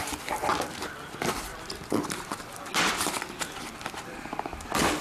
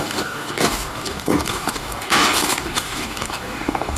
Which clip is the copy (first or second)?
second